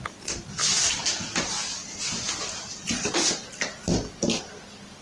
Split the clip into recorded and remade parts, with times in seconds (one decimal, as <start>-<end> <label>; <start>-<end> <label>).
0.0-5.0 recorded